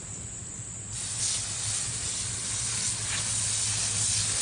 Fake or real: real